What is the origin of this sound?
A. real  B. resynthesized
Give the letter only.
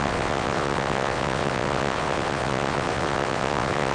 B